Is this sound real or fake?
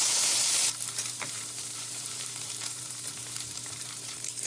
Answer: fake